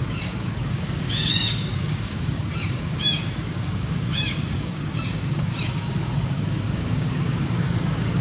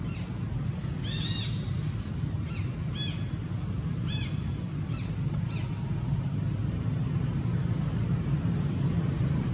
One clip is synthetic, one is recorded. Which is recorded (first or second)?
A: second